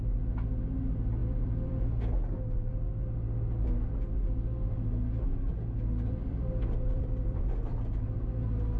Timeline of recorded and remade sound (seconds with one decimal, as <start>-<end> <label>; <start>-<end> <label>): 0.0-1.2 recorded; 1.2-1.8 remade; 1.8-6.2 recorded; 6.2-7.4 remade; 7.4-8.8 recorded